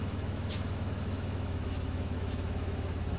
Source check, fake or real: fake